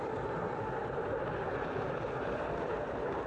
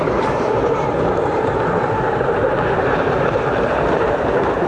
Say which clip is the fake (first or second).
second